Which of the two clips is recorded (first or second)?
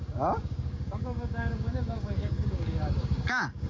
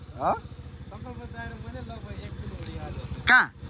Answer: second